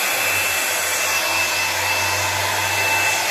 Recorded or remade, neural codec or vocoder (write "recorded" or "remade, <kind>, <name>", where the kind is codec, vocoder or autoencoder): recorded